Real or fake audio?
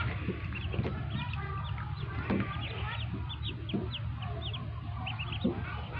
real